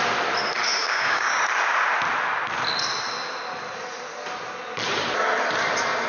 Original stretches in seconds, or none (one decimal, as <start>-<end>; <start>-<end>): 0.0-0.7; 1.4-6.1